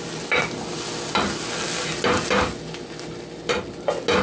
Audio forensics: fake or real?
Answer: real